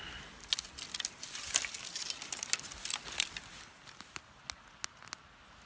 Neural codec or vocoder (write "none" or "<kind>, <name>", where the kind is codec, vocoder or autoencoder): none